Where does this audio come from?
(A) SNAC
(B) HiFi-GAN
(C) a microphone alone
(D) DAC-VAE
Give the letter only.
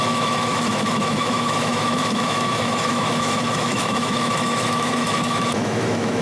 D